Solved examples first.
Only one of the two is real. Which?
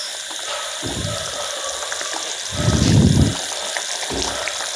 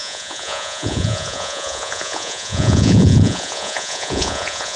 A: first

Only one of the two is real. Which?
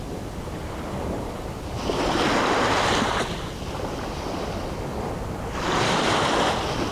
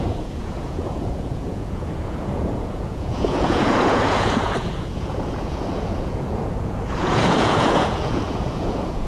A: first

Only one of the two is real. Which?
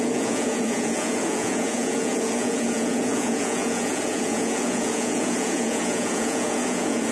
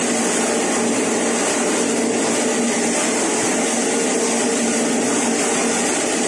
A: second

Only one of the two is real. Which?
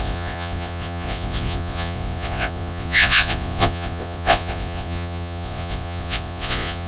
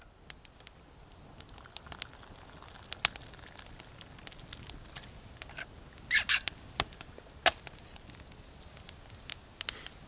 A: second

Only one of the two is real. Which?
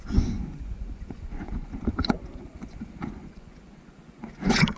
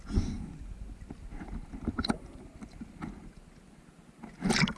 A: second